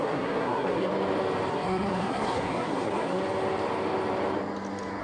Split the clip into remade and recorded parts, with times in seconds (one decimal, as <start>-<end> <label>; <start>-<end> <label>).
0.0-0.9 remade; 0.9-1.5 recorded; 1.5-3.2 remade; 3.2-5.0 recorded